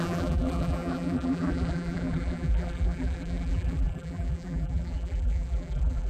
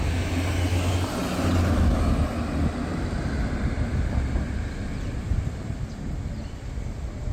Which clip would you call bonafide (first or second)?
second